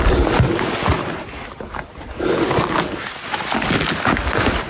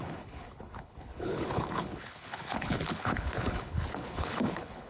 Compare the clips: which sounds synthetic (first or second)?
second